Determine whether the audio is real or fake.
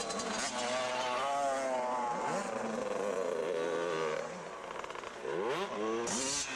real